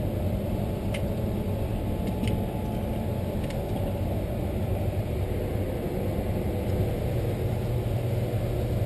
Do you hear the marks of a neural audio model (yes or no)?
no